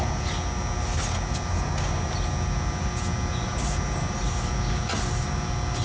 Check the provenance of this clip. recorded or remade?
recorded